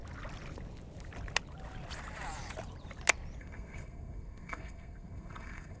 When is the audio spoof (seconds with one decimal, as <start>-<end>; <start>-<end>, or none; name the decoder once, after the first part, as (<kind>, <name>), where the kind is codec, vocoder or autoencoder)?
3.4-5.8 (codec, SNAC)